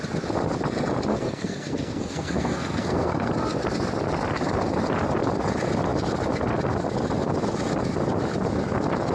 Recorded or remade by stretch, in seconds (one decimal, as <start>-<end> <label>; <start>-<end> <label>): 0.0-1.1 recorded; 1.1-3.3 remade; 3.3-9.1 recorded